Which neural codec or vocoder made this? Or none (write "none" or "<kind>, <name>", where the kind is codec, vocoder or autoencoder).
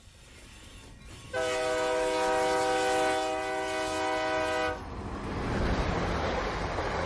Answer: none